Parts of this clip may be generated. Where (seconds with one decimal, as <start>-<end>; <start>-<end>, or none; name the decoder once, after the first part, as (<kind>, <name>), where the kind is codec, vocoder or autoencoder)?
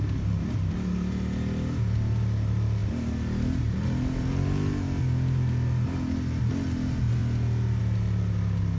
none